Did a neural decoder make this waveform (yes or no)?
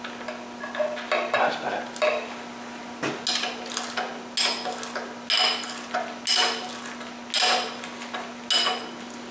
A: no